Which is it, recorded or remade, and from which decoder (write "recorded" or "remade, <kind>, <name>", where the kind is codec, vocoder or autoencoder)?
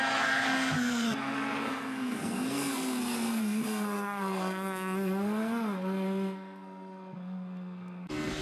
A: remade, codec, SNAC